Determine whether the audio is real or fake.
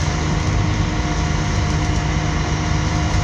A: real